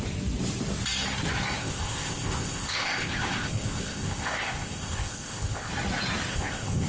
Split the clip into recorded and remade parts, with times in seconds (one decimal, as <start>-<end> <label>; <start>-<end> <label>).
0.0-1.6 recorded; 1.6-5.7 remade; 5.7-6.3 recorded; 6.3-6.9 remade